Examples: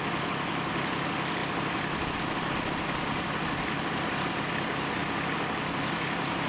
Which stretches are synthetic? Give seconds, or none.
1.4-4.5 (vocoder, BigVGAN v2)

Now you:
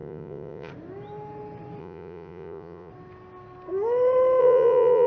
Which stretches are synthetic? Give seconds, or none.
0.0-0.7 (vocoder, Vocos); 1.8-2.9; 4.4-5.1